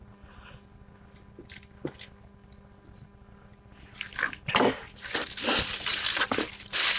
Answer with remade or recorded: recorded